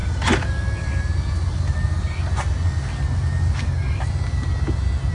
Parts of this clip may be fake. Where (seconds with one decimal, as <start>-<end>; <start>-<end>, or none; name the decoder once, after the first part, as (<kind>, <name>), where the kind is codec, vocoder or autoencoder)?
none